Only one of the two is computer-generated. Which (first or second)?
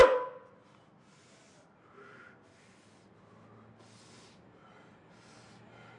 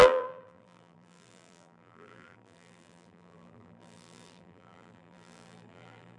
second